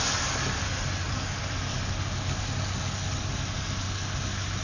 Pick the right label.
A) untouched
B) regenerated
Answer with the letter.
A